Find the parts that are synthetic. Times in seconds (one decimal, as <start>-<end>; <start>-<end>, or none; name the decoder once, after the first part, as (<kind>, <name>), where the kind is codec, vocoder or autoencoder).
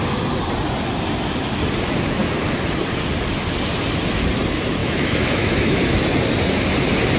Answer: 4.8-5.8 (autoencoder, DAC-VAE)